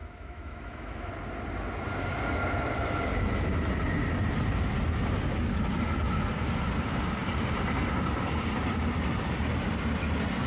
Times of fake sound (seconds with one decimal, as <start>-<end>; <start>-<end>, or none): 0.0-1.1